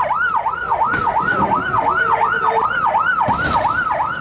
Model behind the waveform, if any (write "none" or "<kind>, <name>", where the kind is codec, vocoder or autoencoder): none